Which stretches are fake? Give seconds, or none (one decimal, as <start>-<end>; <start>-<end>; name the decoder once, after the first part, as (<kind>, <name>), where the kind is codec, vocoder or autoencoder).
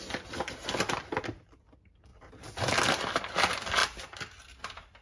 none